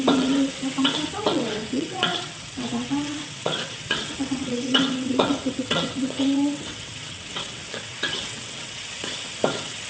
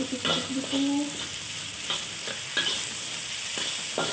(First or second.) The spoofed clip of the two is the first